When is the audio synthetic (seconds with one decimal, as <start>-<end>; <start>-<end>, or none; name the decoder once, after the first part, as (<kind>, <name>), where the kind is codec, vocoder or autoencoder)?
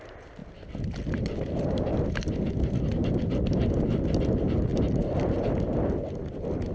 none